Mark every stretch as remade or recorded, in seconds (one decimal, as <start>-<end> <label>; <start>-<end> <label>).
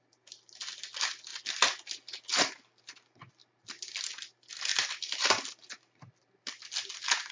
0.0-7.3 recorded